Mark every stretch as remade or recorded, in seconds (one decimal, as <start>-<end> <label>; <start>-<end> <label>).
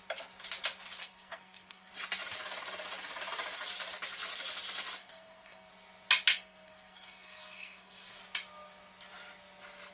0.0-1.0 recorded; 1.0-1.9 remade; 1.9-5.0 recorded; 5.0-5.7 remade; 5.7-6.3 recorded; 6.3-8.2 remade; 8.2-9.9 recorded